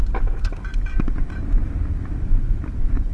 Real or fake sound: real